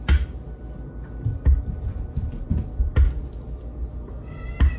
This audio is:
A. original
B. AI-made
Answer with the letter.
A